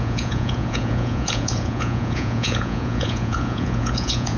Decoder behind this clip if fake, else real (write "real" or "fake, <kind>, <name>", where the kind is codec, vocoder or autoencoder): fake, vocoder, Vocos